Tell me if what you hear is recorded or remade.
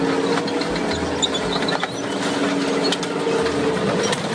recorded